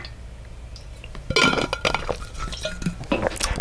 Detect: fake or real real